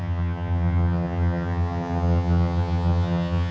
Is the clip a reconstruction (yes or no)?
yes